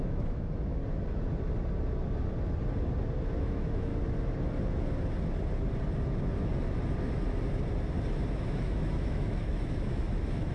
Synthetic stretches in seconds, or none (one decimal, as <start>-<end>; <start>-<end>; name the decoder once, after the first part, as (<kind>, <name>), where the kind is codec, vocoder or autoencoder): 0.0-0.8 (autoencoder, DAC-VAE); 3.4-3.9; 8.4-10.5